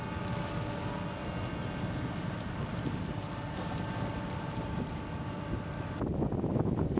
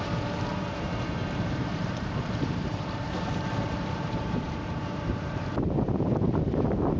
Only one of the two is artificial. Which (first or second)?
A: second